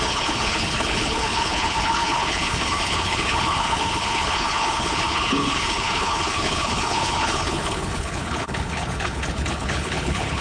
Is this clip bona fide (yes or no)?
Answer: no